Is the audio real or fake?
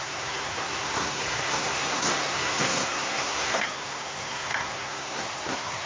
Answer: fake